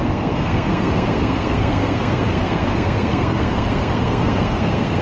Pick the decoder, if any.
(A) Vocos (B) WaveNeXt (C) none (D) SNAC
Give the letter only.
D